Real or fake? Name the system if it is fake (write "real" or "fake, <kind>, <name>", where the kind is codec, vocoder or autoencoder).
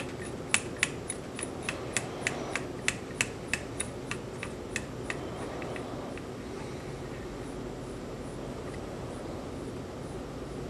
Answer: real